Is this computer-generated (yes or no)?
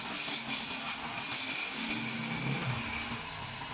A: no